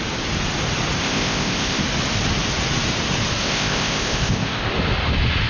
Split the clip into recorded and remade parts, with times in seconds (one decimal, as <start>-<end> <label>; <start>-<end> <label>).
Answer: 0.0-1.0 recorded; 1.0-1.8 remade; 1.8-3.4 recorded; 3.4-4.7 remade; 4.7-5.5 recorded